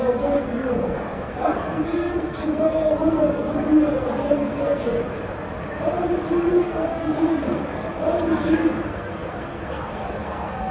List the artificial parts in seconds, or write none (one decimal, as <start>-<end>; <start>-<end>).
0.0-5.0; 6.5-10.7